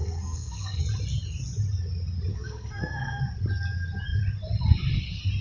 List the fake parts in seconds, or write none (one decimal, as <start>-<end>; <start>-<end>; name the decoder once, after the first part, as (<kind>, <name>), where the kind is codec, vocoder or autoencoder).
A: 0.0-0.8 (codec, SNAC); 2.3-3.2

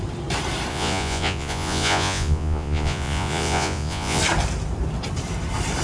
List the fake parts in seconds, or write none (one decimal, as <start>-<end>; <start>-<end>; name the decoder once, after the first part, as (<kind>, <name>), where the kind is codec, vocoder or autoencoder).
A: 0.7-4.2 (vocoder, Vocos)

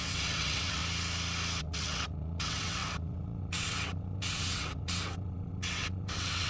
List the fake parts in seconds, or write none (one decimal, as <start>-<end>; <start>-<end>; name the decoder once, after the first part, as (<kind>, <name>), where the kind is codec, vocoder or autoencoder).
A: 0.0-0.8 (vocoder, WaveNeXt); 1.6-6.5